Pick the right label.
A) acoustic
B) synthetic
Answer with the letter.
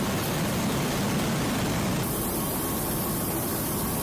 A